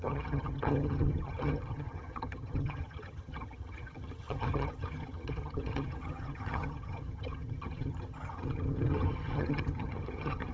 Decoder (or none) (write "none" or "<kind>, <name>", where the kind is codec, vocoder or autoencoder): vocoder, HiFi-GAN